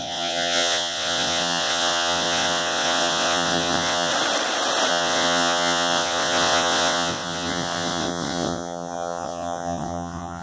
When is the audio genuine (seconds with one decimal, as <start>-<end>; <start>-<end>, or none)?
4.1-4.9